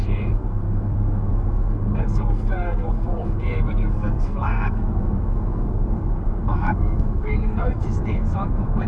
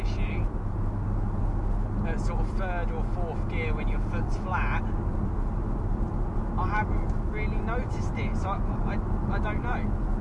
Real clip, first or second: second